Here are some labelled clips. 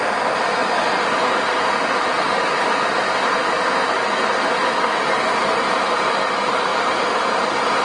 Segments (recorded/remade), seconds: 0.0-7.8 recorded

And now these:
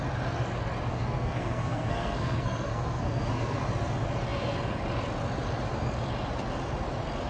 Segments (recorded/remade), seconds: 0.0-0.9 recorded; 0.9-3.6 remade; 3.6-7.3 recorded

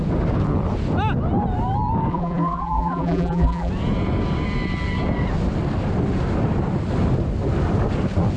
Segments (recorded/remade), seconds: 0.0-2.1 recorded; 2.1-3.7 remade; 3.7-8.4 recorded

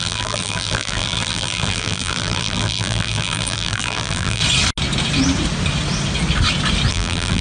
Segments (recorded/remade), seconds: 0.0-4.4 remade; 4.4-6.9 recorded; 6.9-7.4 remade

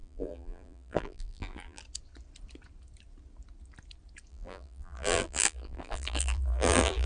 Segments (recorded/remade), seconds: 0.0-1.8 remade; 1.8-4.3 recorded; 4.3-7.1 remade